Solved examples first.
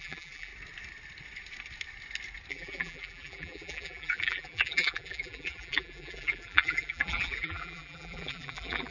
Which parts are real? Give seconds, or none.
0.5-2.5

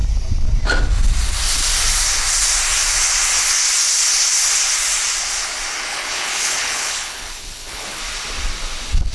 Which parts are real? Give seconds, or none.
0.0-5.9; 8.0-9.1

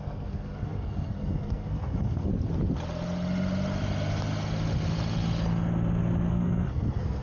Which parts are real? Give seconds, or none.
2.3-6.3

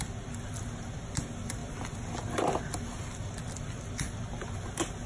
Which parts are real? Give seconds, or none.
0.0-5.1

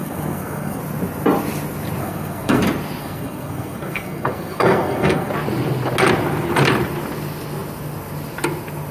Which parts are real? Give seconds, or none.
0.8-2.0; 2.6-3.0; 5.3-8.9

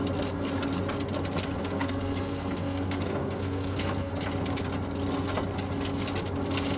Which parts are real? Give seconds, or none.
0.0-1.6; 4.1-6.8

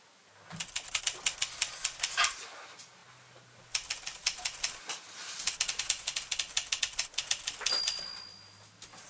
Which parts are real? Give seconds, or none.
0.0-9.1

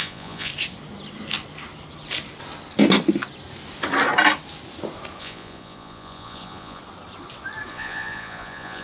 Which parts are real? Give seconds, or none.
0.5-5.2; 6.8-7.7